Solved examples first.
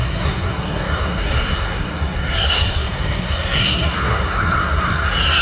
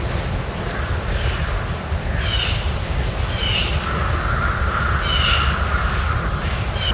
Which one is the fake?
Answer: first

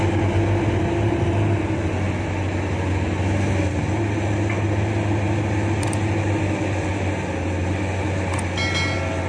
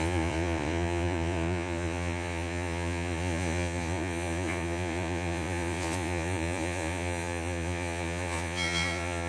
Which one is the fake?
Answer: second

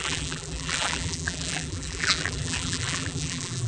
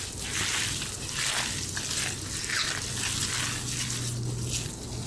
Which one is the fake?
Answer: first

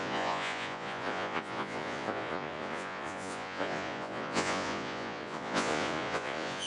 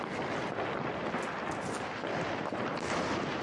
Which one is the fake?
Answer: first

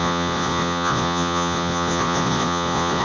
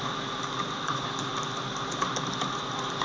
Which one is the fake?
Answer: first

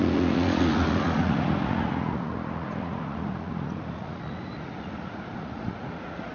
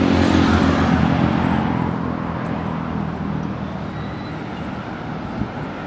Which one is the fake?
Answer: first